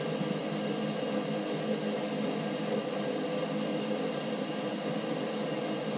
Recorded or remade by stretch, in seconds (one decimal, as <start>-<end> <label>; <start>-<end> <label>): 0.0-3.7 recorded; 3.7-5.4 remade; 5.4-6.0 recorded